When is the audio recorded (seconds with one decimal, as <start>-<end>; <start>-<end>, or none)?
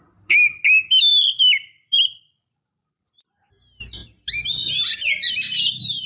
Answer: 0.0-1.1; 3.2-4.0